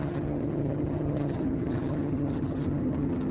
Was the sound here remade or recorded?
remade